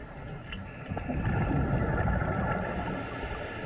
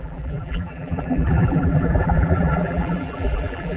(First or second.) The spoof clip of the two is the second